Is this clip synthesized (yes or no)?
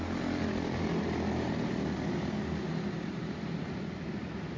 no